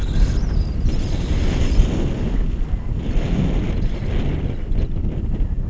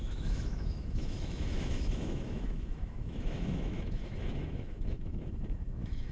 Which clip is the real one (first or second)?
first